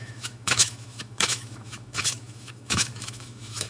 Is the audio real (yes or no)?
no